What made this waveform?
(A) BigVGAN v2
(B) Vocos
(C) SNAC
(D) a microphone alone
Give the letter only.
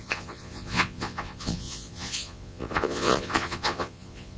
B